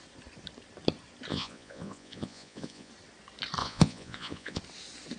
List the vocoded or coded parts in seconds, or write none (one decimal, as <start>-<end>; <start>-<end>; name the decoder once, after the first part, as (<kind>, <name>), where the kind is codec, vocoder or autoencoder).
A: 1.3-2.9 (vocoder, Vocos); 3.6-4.6